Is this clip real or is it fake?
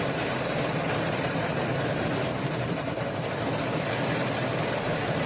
fake